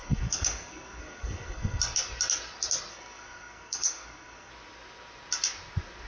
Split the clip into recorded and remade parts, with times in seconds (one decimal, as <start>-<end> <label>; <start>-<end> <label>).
0.0-1.8 remade; 1.8-2.9 recorded; 2.9-4.5 remade; 4.5-6.1 recorded